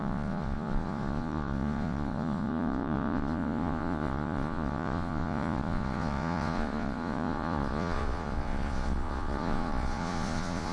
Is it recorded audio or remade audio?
remade